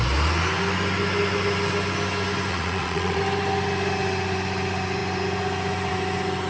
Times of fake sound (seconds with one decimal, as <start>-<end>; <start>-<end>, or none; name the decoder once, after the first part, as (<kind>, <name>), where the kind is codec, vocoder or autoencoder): 2.5-3.2 (vocoder, Vocos)